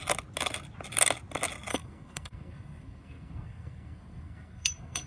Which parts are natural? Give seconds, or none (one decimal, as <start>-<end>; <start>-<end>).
0.0-1.7